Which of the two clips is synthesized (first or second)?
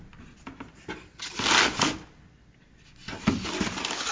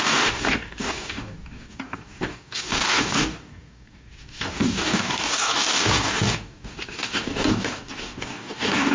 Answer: second